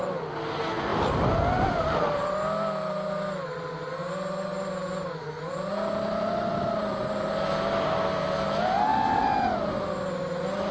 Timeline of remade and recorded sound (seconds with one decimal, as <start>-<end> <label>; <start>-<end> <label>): 0.0-10.7 recorded